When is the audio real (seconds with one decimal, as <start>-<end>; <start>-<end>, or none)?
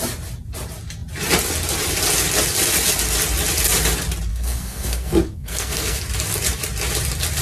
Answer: 0.0-4.3; 6.0-7.4